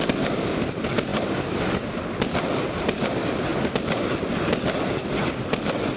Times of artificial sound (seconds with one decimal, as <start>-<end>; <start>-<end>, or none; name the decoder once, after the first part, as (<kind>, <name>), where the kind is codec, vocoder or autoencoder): none